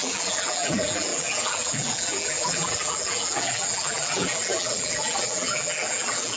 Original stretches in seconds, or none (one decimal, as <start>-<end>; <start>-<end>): none